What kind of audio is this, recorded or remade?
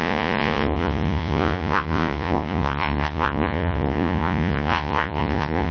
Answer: remade